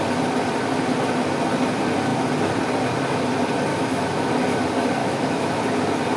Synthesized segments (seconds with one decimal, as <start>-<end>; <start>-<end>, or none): 3.7-4.3; 5.0-5.6